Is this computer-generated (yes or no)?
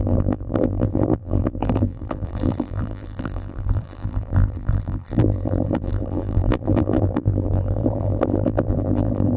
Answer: yes